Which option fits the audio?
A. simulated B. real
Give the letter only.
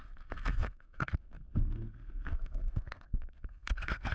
A